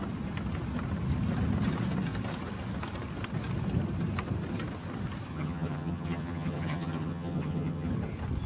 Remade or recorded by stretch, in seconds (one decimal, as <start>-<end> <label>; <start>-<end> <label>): 0.0-5.3 recorded; 5.3-7.9 remade; 7.9-8.5 recorded